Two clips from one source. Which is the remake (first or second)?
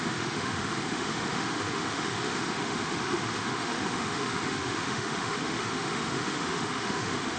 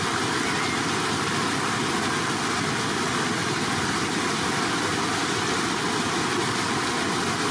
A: first